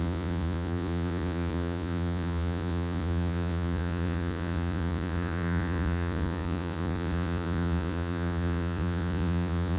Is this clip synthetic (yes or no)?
yes